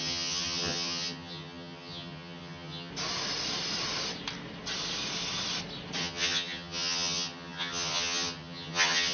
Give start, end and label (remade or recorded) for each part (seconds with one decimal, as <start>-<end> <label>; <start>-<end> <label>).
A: 0.0-2.9 remade; 2.9-6.0 recorded; 6.0-9.1 remade